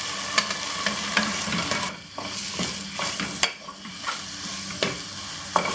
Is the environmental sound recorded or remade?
recorded